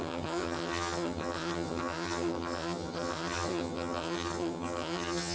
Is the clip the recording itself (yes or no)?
no